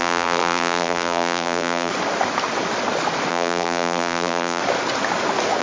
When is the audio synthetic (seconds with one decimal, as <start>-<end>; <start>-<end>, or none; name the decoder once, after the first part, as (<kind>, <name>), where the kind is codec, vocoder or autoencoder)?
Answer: 0.0-1.9 (vocoder, BigVGAN v2); 3.3-4.6

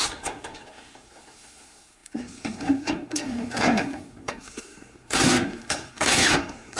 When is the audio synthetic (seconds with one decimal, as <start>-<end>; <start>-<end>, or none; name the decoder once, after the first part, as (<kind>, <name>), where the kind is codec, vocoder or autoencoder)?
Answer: 0.0-6.8 (codec, SNAC)

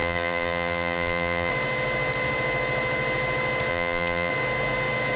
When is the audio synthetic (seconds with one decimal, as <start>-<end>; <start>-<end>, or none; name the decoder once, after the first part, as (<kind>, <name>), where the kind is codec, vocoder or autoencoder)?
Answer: 0.0-1.5 (vocoder, BigVGAN v2); 3.7-4.3

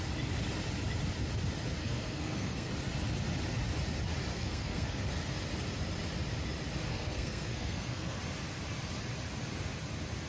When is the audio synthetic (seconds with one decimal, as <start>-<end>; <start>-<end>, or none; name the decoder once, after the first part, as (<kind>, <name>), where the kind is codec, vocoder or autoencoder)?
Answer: 1.8-2.7 (codec, SNAC); 4.3-5.1; 6.9-8.2